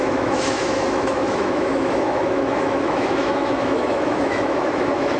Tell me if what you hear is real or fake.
fake